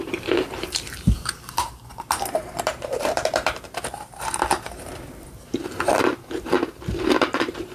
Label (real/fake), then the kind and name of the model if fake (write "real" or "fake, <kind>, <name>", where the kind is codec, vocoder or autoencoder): fake, vocoder, BigVGAN v2